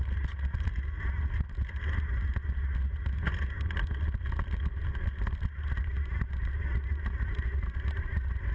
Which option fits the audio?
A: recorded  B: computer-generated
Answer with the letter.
A